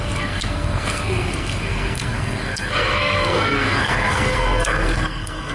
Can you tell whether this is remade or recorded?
remade